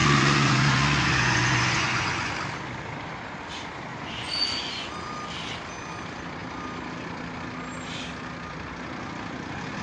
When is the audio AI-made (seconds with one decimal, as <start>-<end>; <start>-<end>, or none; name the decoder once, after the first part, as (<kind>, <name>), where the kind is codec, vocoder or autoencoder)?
0.0-2.3 (vocoder, Vocos); 3.9-4.9